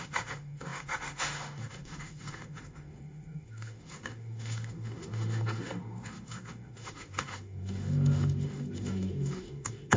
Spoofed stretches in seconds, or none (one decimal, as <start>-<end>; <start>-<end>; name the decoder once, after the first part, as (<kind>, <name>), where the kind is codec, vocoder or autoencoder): 0.0-10.0 (autoencoder, DAC-VAE)

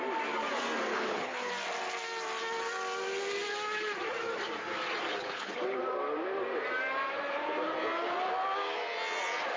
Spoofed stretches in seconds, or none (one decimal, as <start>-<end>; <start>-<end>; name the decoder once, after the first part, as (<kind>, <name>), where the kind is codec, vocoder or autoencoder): 0.9-1.5 (codec, HILCodec); 5.1-5.8

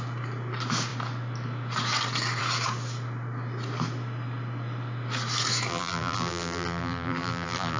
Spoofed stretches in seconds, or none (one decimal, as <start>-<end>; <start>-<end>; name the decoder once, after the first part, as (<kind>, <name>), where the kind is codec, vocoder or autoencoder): 5.7-7.8 (vocoder, BigVGAN v2)

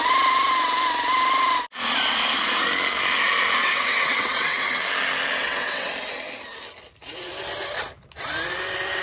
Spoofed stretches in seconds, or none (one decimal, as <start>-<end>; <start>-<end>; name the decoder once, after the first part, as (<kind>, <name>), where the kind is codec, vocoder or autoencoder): 3.6-4.8 (vocoder, WaveNeXt); 5.4-5.9

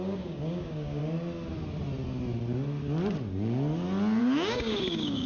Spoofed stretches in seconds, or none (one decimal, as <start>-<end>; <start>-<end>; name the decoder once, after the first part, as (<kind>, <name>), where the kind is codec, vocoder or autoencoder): 0.0-1.0 (codec, DAC); 4.2-5.3